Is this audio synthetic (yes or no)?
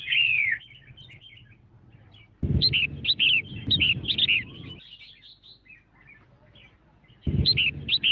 no